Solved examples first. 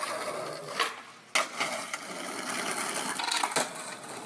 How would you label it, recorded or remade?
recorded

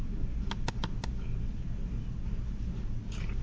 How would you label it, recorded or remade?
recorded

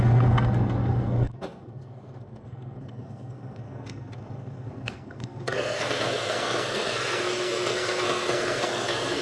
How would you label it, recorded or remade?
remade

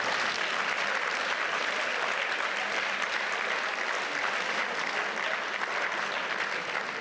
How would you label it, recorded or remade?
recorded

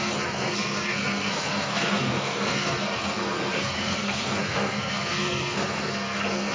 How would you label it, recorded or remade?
remade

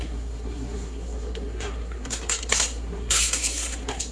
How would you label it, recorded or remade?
remade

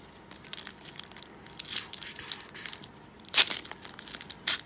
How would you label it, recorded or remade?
recorded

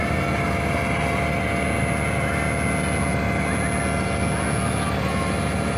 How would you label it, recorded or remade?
recorded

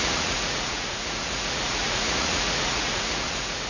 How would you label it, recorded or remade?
remade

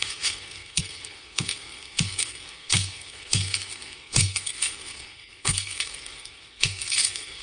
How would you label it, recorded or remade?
remade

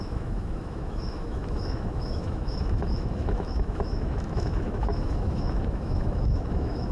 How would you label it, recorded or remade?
remade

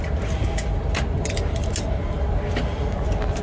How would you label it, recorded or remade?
recorded